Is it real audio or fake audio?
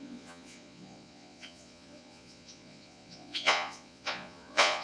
fake